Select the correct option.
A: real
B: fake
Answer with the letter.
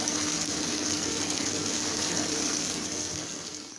B